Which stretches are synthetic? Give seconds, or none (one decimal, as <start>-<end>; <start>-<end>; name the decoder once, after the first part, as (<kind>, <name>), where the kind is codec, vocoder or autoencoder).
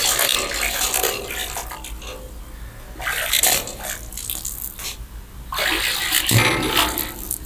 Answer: none